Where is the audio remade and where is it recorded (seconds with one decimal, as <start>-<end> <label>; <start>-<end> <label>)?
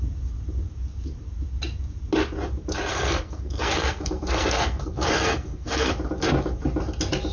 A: 0.0-2.9 recorded; 2.9-5.9 remade; 5.9-7.3 recorded